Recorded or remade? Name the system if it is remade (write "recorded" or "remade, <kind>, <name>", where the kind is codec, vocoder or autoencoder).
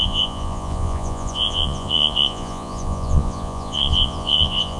remade, vocoder, Vocos